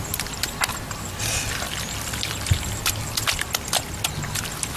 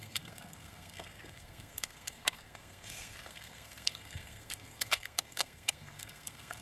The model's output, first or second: second